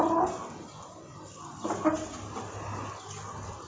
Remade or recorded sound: recorded